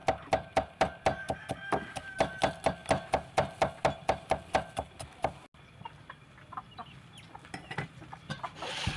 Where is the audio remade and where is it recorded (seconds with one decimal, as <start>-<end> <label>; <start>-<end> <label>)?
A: 0.0-9.0 recorded